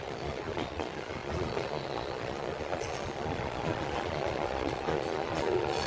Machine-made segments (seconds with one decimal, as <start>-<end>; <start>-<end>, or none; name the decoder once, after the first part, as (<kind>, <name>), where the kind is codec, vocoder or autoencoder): 0.0-5.9 (vocoder, Vocos)